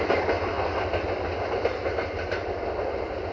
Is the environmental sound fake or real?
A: real